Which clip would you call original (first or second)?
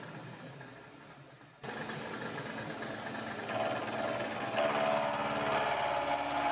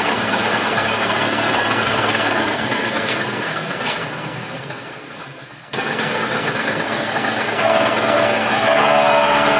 first